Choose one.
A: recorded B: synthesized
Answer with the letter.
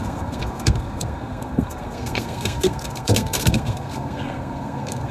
B